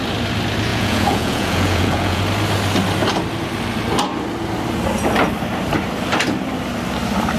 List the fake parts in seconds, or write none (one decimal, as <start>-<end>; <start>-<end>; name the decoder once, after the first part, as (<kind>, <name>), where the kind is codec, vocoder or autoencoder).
0.7-2.2 (vocoder, Vocos)